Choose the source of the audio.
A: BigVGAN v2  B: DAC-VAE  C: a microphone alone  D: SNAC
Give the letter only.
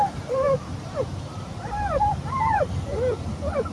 A